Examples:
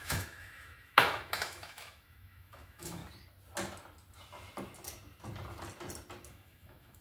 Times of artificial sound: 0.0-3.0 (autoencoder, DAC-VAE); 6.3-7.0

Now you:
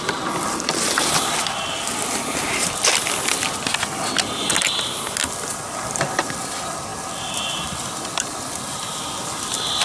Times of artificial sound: none

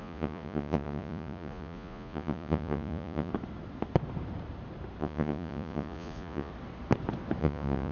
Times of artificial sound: 0.0-3.3 (vocoder, Vocos); 5.0-6.5; 7.4-7.9

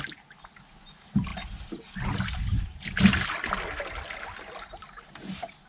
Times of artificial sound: none

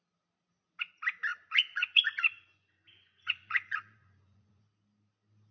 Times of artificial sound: 1.3-4.6 (vocoder, Vocos)

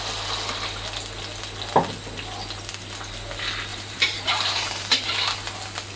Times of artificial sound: 3.7-5.1 (vocoder, BigVGAN v2)